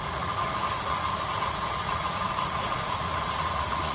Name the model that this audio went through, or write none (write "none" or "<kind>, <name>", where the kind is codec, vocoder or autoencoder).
vocoder, Vocos